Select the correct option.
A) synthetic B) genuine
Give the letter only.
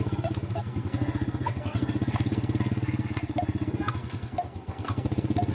A